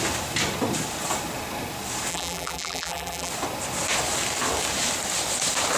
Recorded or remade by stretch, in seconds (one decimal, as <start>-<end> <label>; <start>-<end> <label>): 0.0-2.1 recorded; 2.1-3.3 remade; 3.3-5.8 recorded